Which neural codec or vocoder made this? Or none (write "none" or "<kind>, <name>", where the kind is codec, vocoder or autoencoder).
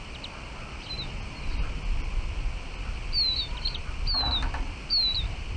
none